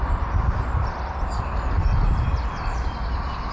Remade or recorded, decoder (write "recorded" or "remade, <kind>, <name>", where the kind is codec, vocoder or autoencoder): recorded